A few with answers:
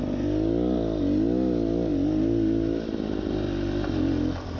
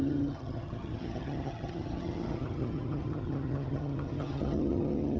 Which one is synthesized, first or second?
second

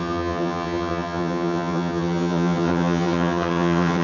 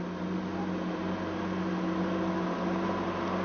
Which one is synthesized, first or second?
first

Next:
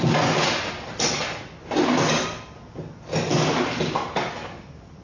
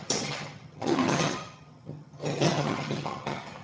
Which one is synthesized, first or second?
second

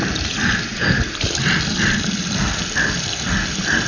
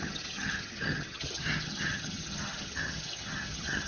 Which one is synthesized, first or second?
second